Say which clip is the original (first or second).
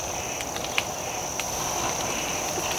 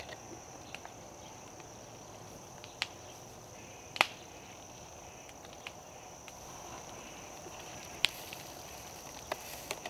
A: first